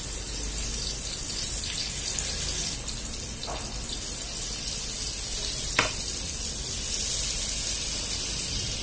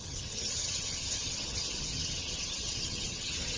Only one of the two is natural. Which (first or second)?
first